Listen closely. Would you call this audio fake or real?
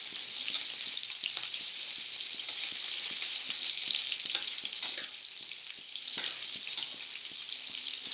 fake